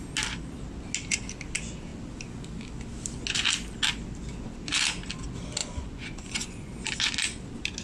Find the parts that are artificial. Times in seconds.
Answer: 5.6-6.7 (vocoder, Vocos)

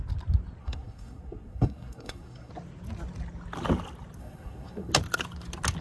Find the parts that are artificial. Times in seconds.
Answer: 0.6-2.5 (codec, SNAC); 4.2-4.9

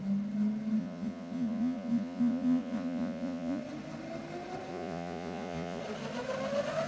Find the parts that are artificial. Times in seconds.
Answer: 0.8-3.6 (vocoder, Vocos); 4.7-5.8